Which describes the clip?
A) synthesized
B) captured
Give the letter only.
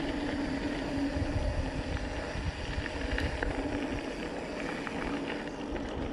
B